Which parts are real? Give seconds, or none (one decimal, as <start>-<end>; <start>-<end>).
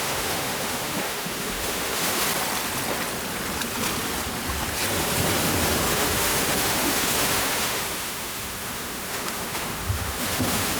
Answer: 2.3-5.4